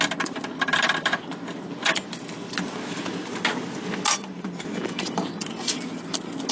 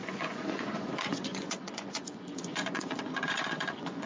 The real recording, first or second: first